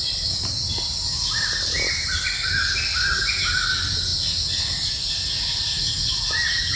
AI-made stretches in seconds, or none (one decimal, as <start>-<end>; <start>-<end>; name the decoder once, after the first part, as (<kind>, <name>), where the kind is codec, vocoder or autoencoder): none